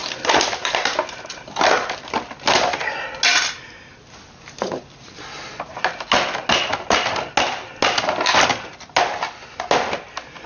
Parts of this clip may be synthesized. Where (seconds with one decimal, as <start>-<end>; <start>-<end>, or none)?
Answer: none